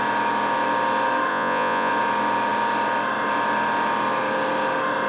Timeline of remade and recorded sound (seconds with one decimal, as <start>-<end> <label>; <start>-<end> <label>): 0.0-1.3 recorded; 1.3-1.9 remade; 1.9-5.1 recorded